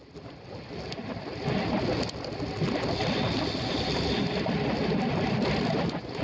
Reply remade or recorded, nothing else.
recorded